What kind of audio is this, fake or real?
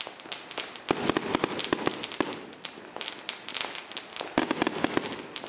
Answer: real